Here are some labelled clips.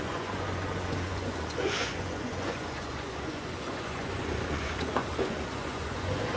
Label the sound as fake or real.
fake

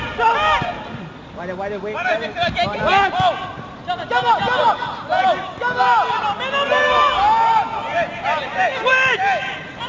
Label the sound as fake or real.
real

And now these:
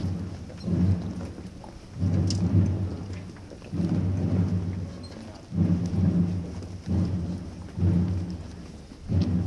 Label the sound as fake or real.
real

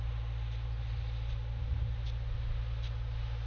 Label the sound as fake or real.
real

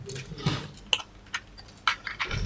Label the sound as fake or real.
real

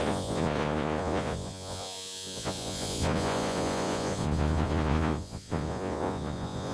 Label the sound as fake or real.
fake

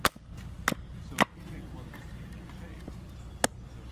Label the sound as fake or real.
real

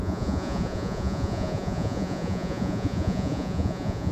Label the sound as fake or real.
fake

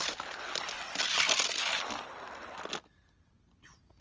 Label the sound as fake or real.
real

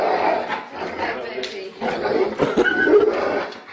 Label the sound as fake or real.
real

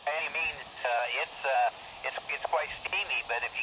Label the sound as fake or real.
real